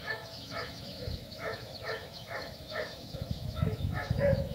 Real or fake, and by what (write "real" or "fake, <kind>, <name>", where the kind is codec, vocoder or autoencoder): fake, autoencoder, DAC-VAE